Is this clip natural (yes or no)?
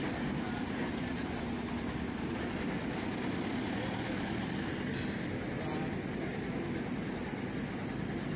yes